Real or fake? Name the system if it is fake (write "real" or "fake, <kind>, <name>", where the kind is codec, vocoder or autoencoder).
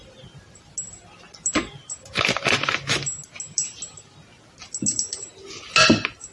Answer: real